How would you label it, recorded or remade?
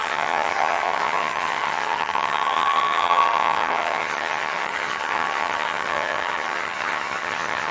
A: remade